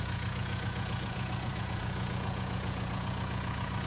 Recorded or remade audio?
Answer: remade